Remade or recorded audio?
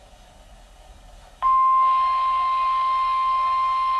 remade